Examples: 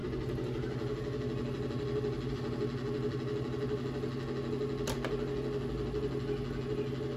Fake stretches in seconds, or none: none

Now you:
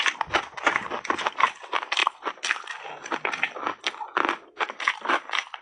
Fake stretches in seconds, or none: none

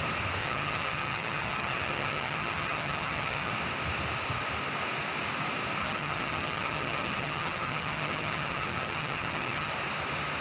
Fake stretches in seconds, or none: 0.4-3.5 (vocoder, HiFi-GAN); 5.8-9.7